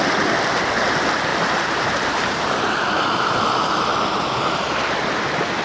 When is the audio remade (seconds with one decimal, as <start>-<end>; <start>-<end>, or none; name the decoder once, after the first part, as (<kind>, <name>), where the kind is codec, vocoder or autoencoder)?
1.3-3.0 (vocoder, BigVGAN v2)